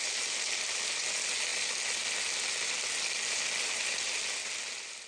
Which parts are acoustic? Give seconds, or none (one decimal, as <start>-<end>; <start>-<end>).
0.0-5.1